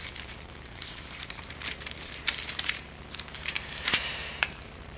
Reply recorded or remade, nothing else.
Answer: remade